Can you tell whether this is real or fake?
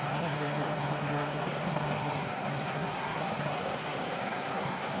fake